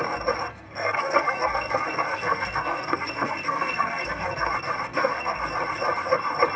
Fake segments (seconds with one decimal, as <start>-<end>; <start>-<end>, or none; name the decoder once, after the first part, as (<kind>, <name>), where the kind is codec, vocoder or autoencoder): 0.5-4.5 (codec, SNAC); 4.9-5.4